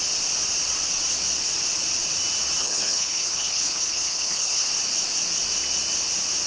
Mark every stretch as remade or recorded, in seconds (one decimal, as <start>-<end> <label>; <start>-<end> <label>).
0.0-2.6 recorded; 2.6-4.7 remade; 4.7-6.5 recorded